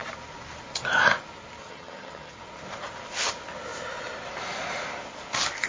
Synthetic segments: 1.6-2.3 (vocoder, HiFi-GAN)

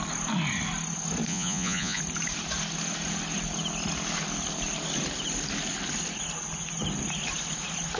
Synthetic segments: 1.3-2.0 (vocoder, Vocos)

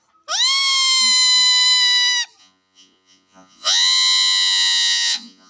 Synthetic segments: 2.4-5.5 (vocoder, Vocos)

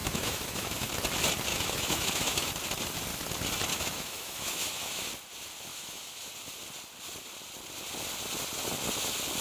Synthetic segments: 0.0-0.9 (autoencoder, DAC-VAE); 1.5-2.5; 3.7-5.1; 5.7-6.3

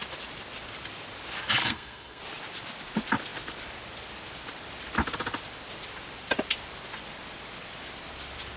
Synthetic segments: 1.6-2.2 (codec, SNAC)

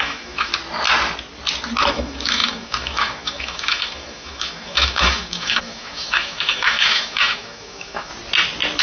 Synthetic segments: 0.0-0.5 (autoencoder, DAC-VAE); 1.9-8.1